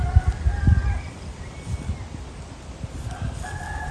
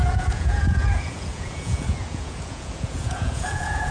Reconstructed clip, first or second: second